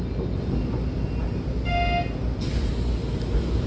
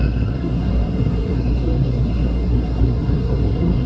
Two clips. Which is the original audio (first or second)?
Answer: first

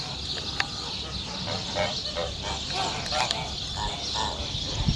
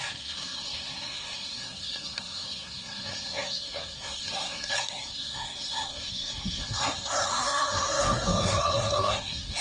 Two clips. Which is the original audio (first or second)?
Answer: first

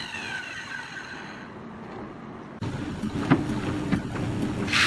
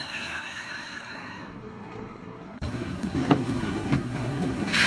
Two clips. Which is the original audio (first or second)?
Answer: first